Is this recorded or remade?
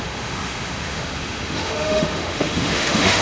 remade